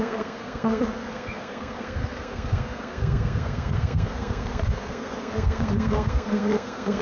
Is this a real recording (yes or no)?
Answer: no